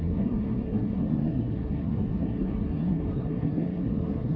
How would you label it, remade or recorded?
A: remade